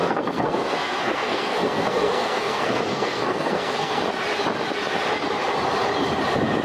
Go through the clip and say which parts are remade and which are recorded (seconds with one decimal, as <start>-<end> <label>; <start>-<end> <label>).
0.0-4.0 remade; 4.0-6.6 recorded